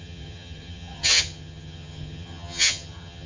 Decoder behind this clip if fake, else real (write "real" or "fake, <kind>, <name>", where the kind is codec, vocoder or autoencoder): fake, vocoder, HiFi-GAN